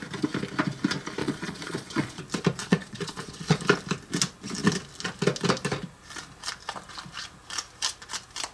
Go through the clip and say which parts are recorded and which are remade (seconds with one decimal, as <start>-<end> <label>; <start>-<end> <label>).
0.0-1.2 recorded; 1.2-2.2 remade; 2.2-2.6 recorded; 2.6-3.6 remade; 3.6-8.5 recorded